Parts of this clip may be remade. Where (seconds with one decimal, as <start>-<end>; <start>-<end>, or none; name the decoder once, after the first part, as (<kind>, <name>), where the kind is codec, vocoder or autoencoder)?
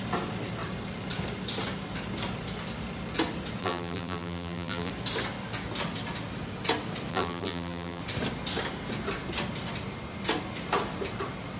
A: 3.6-4.9 (vocoder, BigVGAN v2); 7.1-8.0